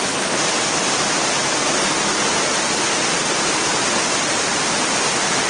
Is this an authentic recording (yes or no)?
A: yes